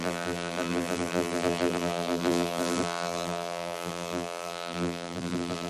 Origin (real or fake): fake